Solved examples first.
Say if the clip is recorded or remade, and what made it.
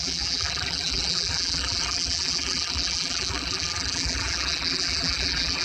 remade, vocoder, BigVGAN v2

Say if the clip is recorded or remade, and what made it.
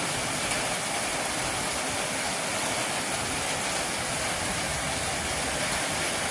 recorded